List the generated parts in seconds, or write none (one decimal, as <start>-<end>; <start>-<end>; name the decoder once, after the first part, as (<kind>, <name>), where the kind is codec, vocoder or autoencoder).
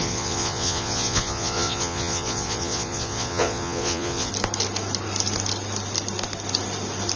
0.0-4.3 (vocoder, Vocos)